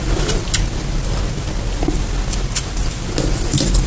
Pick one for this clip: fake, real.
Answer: real